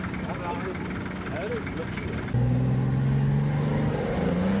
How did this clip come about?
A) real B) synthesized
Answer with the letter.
A